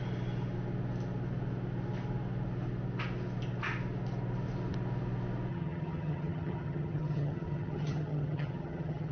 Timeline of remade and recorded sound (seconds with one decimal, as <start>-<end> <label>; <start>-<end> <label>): 0.0-5.5 recorded; 5.5-9.1 remade